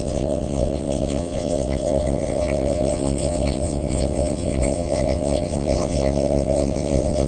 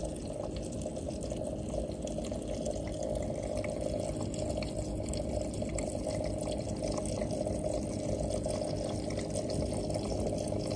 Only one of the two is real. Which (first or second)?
second